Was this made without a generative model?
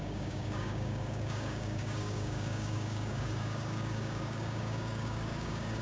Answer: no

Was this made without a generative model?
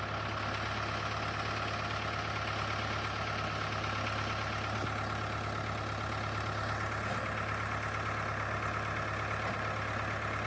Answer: yes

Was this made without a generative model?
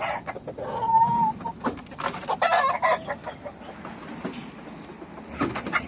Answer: yes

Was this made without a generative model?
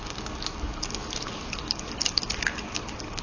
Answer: no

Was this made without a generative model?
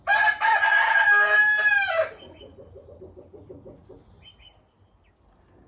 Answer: yes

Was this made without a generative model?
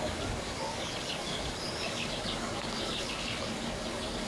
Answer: no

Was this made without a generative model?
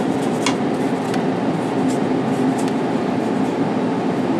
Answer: yes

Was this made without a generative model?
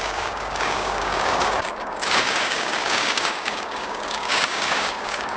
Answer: no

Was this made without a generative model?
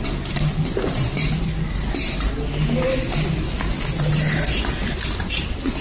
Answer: yes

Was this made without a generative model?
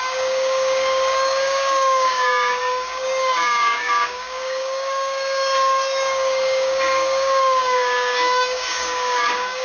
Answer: no